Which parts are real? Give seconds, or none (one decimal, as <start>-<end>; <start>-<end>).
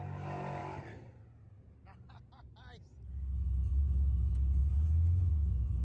0.0-5.8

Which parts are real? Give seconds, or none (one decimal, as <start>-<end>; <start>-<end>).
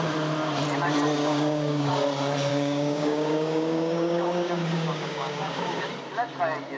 0.0-1.2; 1.9-2.5; 5.9-6.8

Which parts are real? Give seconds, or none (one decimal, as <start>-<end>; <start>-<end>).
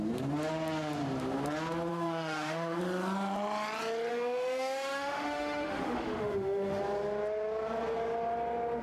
0.0-1.9; 2.8-4.1; 6.8-8.8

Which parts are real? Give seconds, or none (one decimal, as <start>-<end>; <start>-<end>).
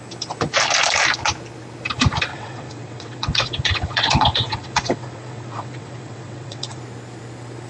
0.0-2.3; 6.8-7.7